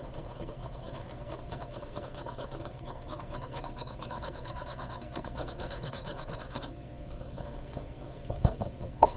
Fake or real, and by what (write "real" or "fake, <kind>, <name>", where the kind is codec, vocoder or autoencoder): fake, codec, SNAC